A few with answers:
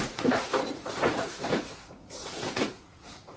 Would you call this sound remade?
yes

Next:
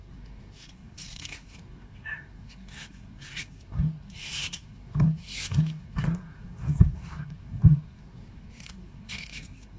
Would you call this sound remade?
yes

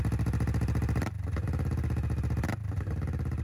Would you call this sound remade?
no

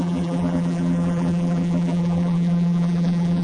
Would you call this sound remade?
yes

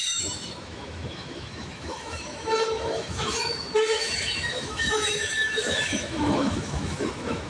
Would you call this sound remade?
yes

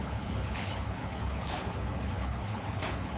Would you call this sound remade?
yes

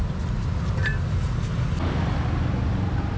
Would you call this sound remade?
no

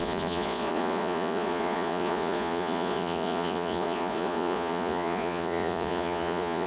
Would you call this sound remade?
yes